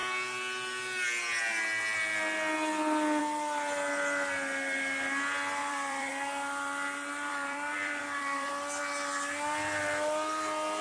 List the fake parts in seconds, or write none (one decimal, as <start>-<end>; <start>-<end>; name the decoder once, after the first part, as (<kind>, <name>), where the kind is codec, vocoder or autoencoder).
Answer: 5.6-6.1 (vocoder, BigVGAN v2); 7.3-8.5